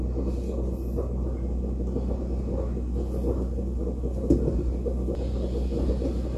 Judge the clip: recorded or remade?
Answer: recorded